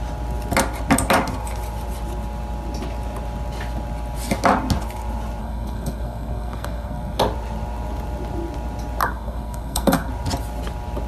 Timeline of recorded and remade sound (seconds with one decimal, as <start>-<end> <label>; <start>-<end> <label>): 0.0-5.4 recorded; 5.4-7.2 remade; 7.2-9.0 recorded; 9.0-10.1 remade; 10.1-11.1 recorded

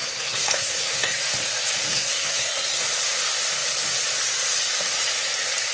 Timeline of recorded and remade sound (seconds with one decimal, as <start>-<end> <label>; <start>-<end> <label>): 0.0-1.2 remade; 1.2-1.9 recorded; 1.9-2.8 remade; 2.8-5.7 recorded